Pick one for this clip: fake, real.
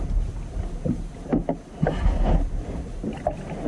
real